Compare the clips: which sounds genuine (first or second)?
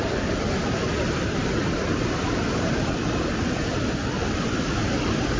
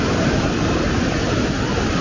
second